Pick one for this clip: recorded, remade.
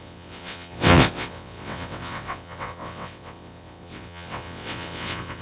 remade